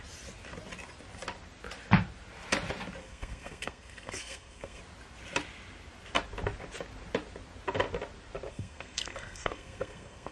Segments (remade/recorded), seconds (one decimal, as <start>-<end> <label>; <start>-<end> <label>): 0.0-3.0 recorded; 3.0-4.8 remade; 4.8-8.5 recorded; 8.5-10.3 remade